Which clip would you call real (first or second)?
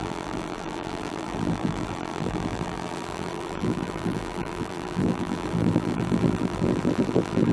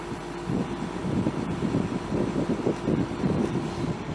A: second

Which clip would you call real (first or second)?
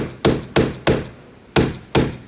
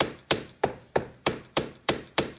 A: first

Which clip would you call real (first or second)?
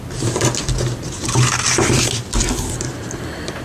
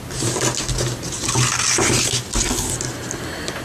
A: second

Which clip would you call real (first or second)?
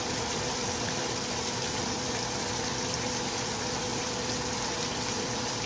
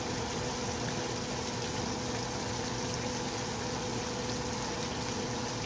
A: second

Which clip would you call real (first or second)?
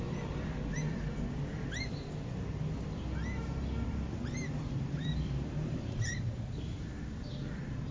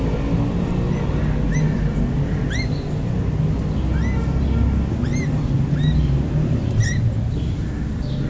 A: second